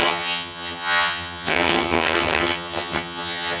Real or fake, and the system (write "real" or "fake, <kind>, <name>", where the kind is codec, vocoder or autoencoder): fake, vocoder, HiFi-GAN